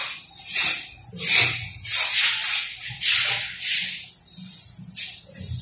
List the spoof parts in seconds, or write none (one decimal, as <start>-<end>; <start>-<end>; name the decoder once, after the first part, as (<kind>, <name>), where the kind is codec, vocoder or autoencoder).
none